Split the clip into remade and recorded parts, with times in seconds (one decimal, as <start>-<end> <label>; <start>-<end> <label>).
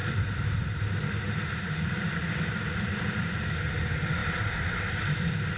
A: 0.0-3.4 remade; 3.4-5.6 recorded